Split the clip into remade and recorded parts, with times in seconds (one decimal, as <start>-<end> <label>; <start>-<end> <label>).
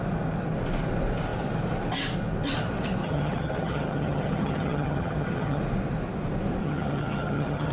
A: 0.0-3.0 recorded; 3.0-5.6 remade; 5.6-6.6 recorded; 6.6-7.7 remade